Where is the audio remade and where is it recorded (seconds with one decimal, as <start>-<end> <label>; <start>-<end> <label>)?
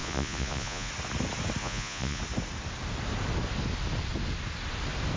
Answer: 0.0-0.9 remade; 0.9-1.6 recorded; 1.6-2.2 remade; 2.2-5.2 recorded